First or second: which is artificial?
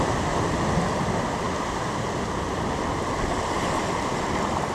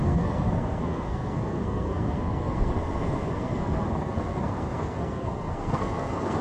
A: second